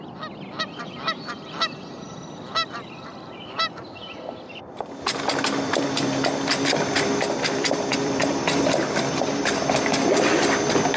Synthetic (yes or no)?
yes